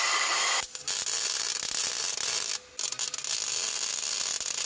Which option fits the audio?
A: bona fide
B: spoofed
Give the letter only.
A